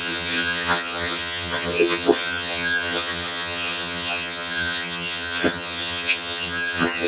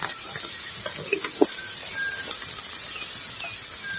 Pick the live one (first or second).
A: second